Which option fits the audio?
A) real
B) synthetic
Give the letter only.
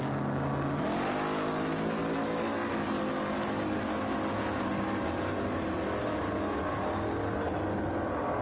A